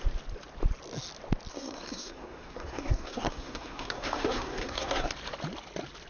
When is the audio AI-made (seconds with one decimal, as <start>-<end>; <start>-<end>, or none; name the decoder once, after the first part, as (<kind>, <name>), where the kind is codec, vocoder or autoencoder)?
1.5-5.1 (codec, SNAC)